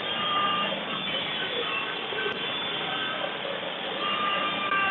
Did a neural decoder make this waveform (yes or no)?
yes